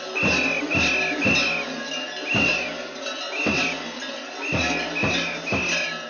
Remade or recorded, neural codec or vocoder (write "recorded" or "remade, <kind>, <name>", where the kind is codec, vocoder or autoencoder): recorded